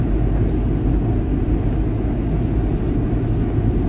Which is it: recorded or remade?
recorded